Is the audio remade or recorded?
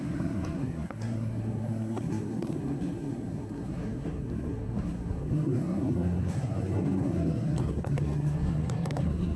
remade